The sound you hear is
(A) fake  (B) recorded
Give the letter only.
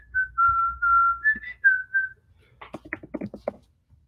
B